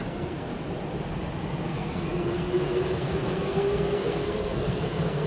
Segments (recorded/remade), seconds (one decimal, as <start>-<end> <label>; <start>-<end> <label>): 0.0-0.5 remade; 0.5-1.6 recorded; 1.6-5.3 remade